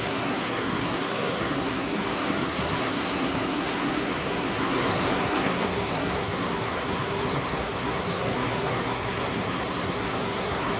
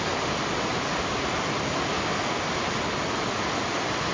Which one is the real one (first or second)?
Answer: second